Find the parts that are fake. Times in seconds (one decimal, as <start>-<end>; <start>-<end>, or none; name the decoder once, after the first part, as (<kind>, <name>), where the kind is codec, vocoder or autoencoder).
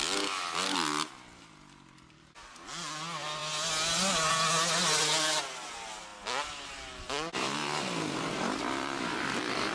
none